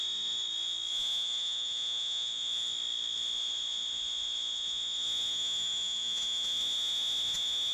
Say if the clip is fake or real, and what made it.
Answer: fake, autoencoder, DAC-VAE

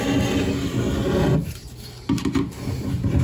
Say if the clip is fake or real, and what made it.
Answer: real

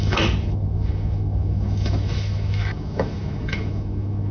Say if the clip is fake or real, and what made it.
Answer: fake, autoencoder, DAC-VAE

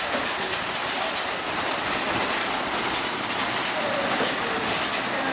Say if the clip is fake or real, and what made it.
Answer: real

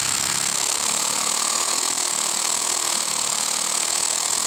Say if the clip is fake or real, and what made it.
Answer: fake, autoencoder, DAC-VAE